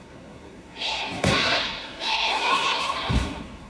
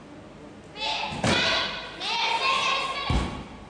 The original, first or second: second